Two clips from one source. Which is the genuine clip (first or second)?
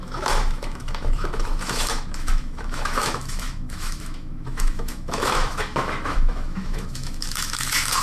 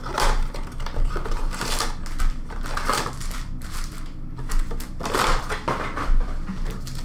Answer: second